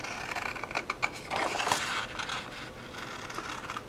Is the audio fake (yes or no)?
no